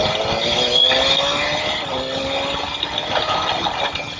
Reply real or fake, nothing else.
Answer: real